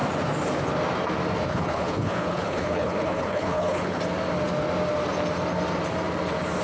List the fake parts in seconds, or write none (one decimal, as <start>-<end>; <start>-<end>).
1.5-4.0